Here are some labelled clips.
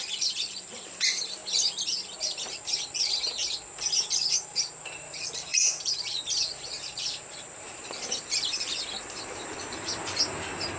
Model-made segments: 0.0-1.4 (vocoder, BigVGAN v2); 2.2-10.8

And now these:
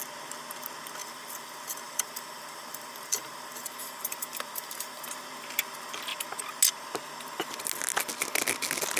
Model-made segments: 1.0-5.0 (vocoder, BigVGAN v2)

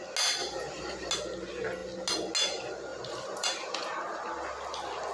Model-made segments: 0.4-1.1 (vocoder, BigVGAN v2); 2.9-4.0

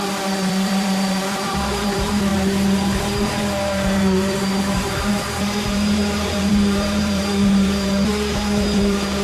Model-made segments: 0.0-9.2 (vocoder, BigVGAN v2)